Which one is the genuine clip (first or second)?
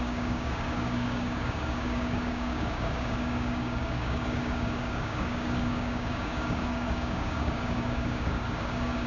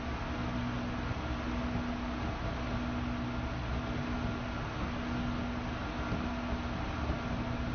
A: second